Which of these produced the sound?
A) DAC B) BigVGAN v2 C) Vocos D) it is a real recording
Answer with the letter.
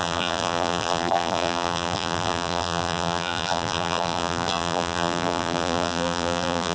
B